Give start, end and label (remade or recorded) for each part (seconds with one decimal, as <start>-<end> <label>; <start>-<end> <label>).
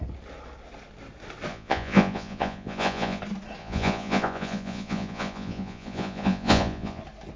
0.0-1.5 recorded; 1.5-3.2 remade; 3.2-3.6 recorded; 3.6-7.0 remade; 7.0-7.4 recorded